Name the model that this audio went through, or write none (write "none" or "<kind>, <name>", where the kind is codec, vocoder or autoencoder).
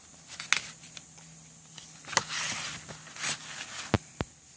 none